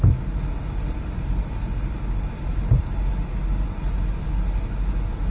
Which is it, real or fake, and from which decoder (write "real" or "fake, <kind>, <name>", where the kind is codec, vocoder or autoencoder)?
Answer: real